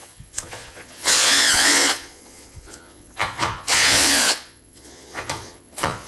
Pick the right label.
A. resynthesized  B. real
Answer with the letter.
A